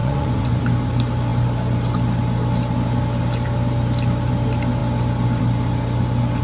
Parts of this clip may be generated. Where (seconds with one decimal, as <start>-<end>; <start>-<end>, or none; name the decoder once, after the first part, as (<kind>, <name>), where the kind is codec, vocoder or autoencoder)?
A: 0.0-0.6 (vocoder, Vocos)